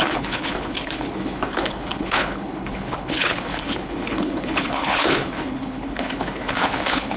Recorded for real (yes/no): no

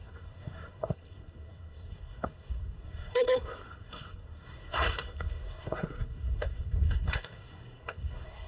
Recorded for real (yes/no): no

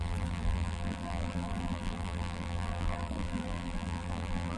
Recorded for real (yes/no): no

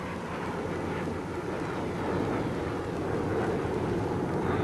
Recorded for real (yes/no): no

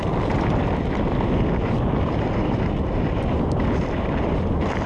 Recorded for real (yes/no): yes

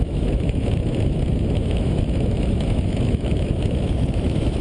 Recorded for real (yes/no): no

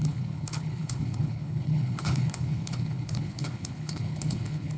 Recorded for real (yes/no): no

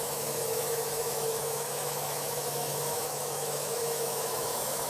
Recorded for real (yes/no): no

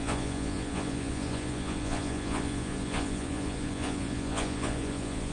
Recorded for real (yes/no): no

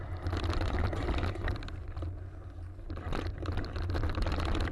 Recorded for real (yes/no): no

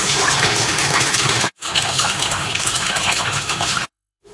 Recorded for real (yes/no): no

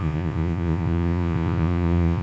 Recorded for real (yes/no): no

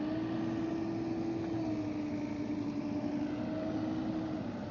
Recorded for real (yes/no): yes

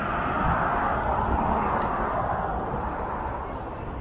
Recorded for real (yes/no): yes